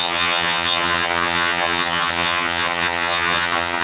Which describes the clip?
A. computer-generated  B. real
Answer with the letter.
A